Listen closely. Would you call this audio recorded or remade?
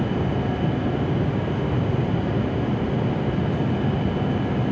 recorded